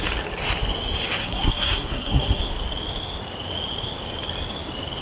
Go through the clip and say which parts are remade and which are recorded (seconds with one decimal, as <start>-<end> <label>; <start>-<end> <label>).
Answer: 0.0-1.2 recorded; 1.2-2.4 remade; 2.4-5.0 recorded

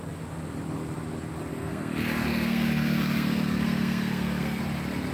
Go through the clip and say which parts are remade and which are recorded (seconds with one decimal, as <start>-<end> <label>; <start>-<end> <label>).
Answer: 0.0-1.5 recorded; 1.5-4.6 remade; 4.6-5.1 recorded

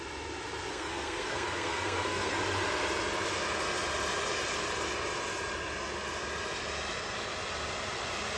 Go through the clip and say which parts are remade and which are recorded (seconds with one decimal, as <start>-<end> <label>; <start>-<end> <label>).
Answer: 0.0-0.7 recorded; 0.7-2.4 remade; 2.4-8.4 recorded

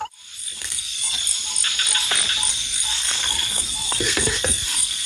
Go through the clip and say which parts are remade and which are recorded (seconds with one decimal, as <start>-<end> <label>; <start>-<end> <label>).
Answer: 0.0-0.4 recorded; 0.4-1.2 remade; 1.2-2.5 recorded; 2.5-5.1 remade

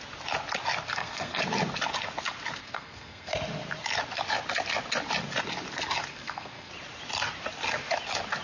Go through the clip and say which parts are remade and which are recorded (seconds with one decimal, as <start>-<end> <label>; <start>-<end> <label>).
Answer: 0.0-0.9 recorded; 0.9-1.4 remade; 1.4-2.6 recorded; 2.6-3.3 remade; 3.3-6.1 recorded; 6.1-6.7 remade; 6.7-8.4 recorded